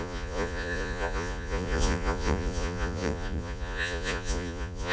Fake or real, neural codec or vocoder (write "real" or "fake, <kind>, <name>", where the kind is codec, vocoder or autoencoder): fake, vocoder, Vocos